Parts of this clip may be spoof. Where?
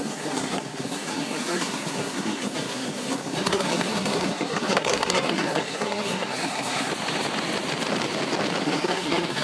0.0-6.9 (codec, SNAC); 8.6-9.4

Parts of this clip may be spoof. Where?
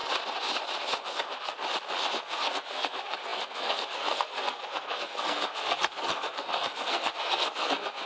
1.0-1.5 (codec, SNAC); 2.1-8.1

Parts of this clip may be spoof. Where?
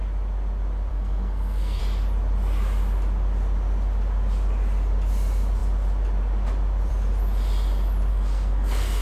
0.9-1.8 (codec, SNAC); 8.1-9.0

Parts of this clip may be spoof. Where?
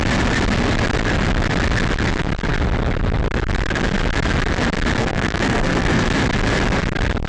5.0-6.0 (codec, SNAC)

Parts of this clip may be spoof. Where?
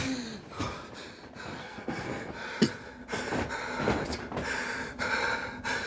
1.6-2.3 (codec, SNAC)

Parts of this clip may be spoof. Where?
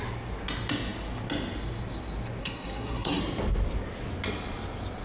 2.4-3.2 (codec, SNAC)